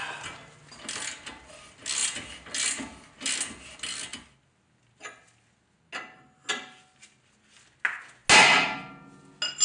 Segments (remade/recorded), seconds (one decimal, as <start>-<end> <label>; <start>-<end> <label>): 0.0-9.6 recorded